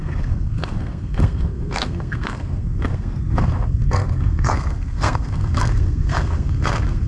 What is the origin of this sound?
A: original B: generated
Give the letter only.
B